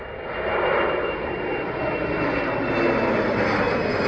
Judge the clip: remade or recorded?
recorded